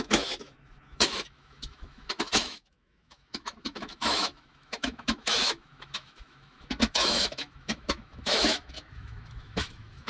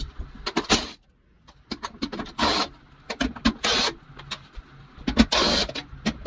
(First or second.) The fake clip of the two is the first